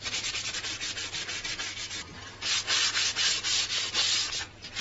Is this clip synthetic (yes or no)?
no